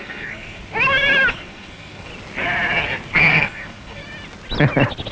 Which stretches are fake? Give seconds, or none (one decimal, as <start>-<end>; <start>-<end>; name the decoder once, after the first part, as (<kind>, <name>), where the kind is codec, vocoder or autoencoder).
0.0-0.6 (codec, SNAC); 1.3-2.1; 3.3-4.0